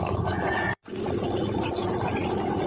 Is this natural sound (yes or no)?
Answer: no